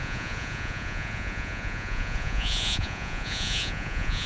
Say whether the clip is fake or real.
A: fake